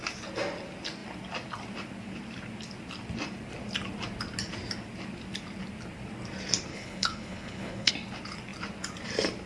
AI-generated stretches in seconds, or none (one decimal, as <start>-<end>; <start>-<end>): 6.7-7.9

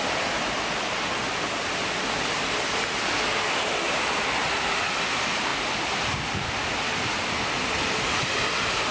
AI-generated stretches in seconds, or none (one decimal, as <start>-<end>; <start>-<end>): none

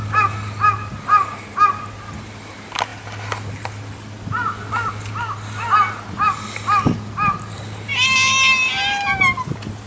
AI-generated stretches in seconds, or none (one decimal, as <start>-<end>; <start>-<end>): none

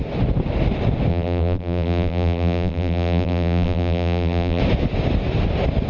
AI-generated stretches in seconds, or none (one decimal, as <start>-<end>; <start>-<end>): 1.1-4.6

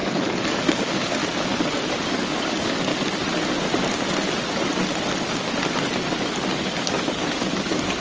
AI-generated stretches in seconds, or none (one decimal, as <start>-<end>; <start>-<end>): 0.0-1.2; 1.9-2.9; 6.3-8.0

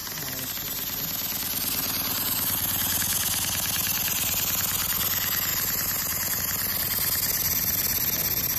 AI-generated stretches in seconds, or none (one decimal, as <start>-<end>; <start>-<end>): 1.8-3.0; 5.5-6.4